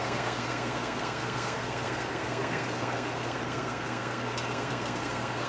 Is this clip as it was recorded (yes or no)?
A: no